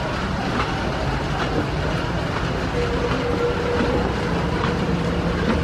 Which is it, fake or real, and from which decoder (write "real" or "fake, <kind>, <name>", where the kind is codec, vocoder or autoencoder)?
real